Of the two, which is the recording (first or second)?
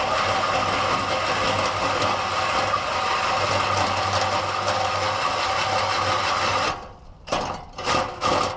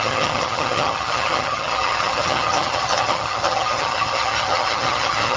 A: first